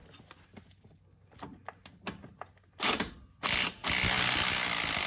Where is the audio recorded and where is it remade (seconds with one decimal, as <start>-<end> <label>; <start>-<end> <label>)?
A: 0.0-5.1 recorded